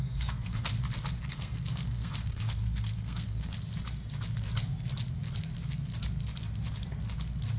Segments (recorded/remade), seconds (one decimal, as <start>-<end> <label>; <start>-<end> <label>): 0.0-0.7 remade; 0.7-1.3 recorded; 1.3-3.5 remade; 3.5-7.6 recorded